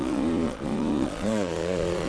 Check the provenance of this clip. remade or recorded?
remade